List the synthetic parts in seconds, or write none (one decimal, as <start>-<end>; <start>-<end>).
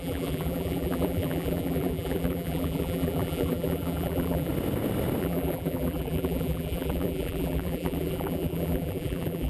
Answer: 0.0-4.5; 5.2-9.5